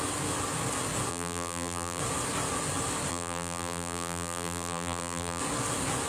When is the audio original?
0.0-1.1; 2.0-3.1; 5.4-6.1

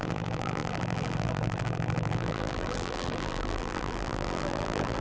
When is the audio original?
none

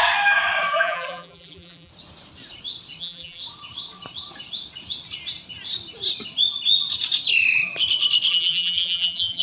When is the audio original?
0.0-0.7; 1.9-3.0; 3.4-8.3

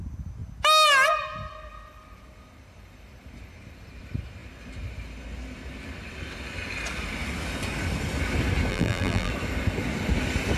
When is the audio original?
0.0-8.7; 9.3-10.6

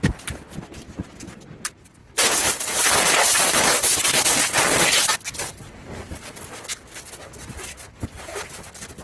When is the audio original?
0.0-2.0; 6.9-9.0

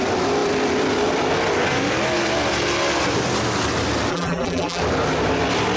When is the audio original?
0.0-4.1; 4.8-5.8

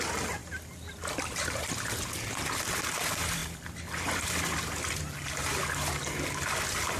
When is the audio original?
0.0-0.4; 1.7-7.0